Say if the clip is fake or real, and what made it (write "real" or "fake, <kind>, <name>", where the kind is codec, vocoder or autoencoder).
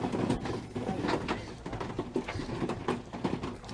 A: real